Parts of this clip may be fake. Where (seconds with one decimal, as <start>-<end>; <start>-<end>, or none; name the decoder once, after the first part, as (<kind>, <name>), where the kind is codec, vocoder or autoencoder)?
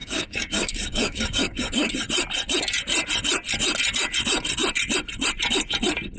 0.0-1.9 (codec, DAC)